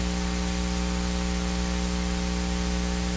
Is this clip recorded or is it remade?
recorded